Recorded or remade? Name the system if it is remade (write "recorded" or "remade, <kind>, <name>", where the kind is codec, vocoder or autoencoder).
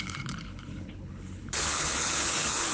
remade, codec, HILCodec